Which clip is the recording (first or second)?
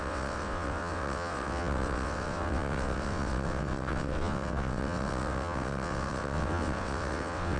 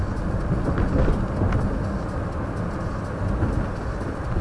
second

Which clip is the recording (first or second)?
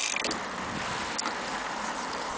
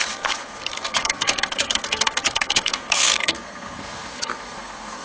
first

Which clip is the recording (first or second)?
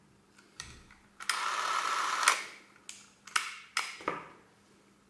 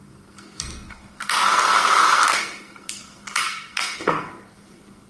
first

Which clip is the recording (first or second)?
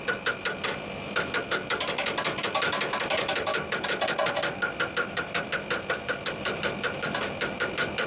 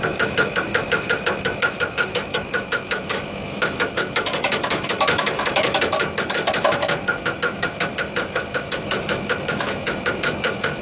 first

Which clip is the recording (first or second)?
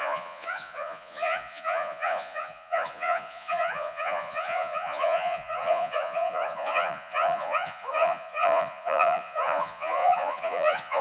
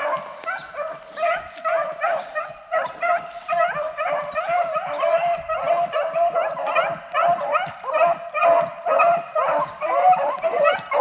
second